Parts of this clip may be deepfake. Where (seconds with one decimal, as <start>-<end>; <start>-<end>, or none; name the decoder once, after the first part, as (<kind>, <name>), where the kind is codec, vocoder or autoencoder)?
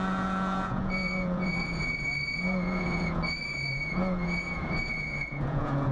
0.0-5.9 (vocoder, Vocos)